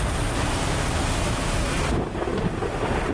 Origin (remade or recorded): recorded